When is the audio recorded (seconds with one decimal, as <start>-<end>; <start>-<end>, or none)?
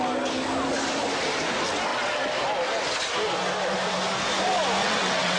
0.0-4.8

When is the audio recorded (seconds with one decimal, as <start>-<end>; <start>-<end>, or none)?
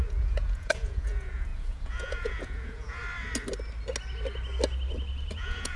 3.0-5.3